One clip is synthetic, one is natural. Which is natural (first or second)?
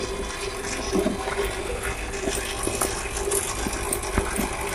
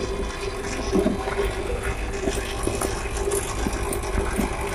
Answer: second